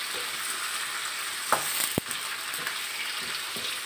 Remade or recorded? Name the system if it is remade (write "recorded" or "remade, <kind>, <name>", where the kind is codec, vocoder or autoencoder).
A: recorded